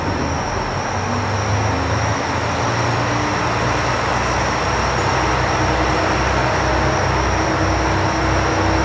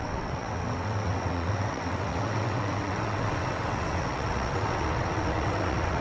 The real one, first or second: first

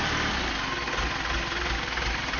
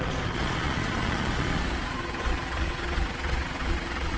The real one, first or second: first